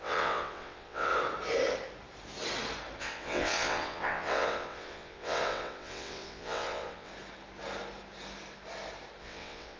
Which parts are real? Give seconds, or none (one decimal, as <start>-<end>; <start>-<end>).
1.1-3.0; 7.1-9.2